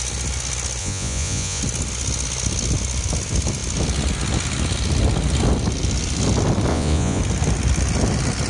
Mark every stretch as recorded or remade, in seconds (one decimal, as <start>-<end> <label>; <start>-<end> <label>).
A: 0.0-0.8 recorded; 0.8-1.6 remade; 1.6-6.7 recorded; 6.7-7.2 remade; 7.2-8.5 recorded

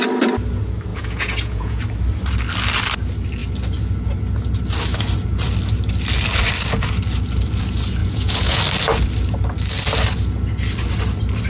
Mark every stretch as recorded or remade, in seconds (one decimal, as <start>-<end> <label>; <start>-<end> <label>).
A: 0.0-0.9 recorded; 0.9-1.8 remade; 1.8-8.0 recorded; 8.0-8.6 remade; 8.6-11.5 recorded

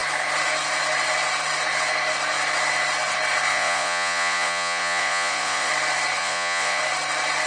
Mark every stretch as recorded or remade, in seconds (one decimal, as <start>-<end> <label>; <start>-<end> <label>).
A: 0.0-3.5 recorded; 3.5-5.7 remade; 5.7-6.2 recorded; 6.2-6.8 remade; 6.8-7.5 recorded

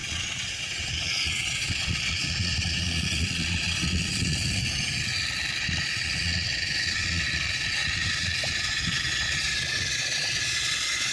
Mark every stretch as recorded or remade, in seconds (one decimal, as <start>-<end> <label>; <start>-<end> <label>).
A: 0.0-4.6 remade; 4.6-5.6 recorded; 5.6-11.1 remade

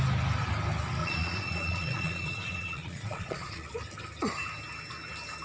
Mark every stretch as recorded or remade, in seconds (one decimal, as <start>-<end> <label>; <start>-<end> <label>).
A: 0.0-1.0 recorded; 1.0-3.7 remade; 3.7-5.4 recorded

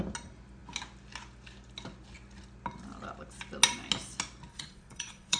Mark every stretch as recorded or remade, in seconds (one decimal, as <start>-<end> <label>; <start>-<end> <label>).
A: 0.0-4.5 recorded; 4.5-5.4 remade

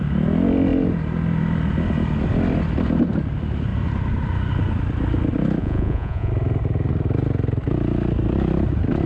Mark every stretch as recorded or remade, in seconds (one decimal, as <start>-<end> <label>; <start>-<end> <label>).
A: 0.0-5.6 recorded; 5.6-6.3 remade; 6.3-9.1 recorded